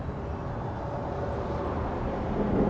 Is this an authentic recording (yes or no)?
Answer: yes